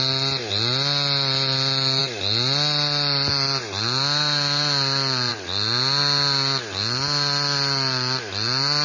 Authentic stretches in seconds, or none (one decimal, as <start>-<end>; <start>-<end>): 0.0-8.8